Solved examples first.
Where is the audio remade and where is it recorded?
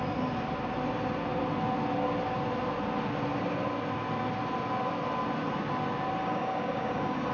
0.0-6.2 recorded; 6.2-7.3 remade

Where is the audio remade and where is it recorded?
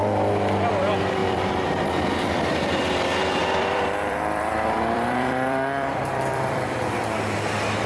0.0-0.7 remade; 0.7-1.2 recorded; 1.2-2.7 remade; 2.7-3.4 recorded; 3.4-7.0 remade; 7.0-7.9 recorded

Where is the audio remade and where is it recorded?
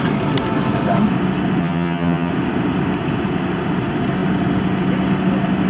0.0-1.6 recorded; 1.6-2.3 remade; 2.3-5.7 recorded